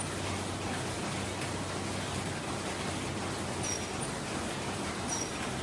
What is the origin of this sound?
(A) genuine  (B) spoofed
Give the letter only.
A